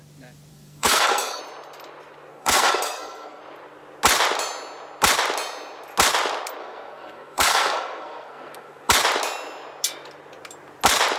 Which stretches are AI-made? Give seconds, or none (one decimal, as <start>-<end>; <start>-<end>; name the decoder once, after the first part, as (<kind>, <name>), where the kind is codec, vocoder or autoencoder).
0.5-1.4 (codec, SNAC); 2.3-3.4; 6.6-8.9